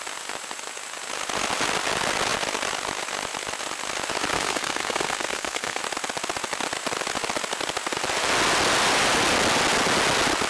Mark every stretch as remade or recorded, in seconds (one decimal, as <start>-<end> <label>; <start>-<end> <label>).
0.0-4.3 recorded; 4.3-5.8 remade; 5.8-10.5 recorded